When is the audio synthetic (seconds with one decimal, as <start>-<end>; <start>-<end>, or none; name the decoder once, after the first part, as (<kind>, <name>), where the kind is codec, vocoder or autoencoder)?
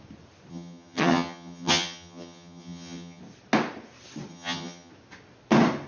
0.5-3.2 (vocoder, HiFi-GAN); 4.3-4.9